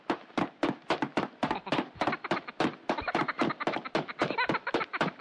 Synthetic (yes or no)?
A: no